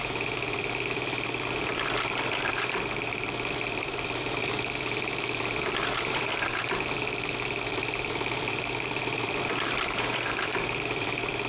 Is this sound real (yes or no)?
no